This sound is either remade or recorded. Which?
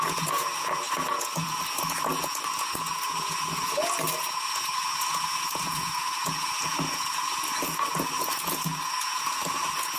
remade